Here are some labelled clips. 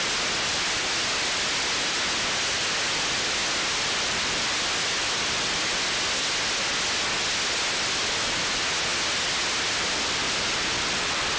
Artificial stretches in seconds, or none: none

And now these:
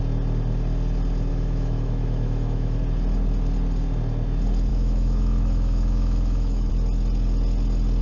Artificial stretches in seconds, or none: 1.3-2.8; 4.7-6.7

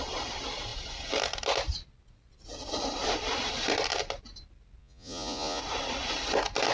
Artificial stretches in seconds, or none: 4.8-5.6